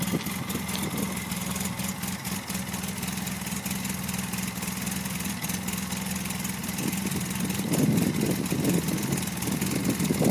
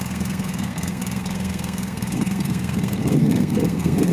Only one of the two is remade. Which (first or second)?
second